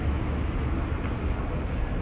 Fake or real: real